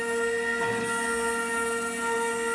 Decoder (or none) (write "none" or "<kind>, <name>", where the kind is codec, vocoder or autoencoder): none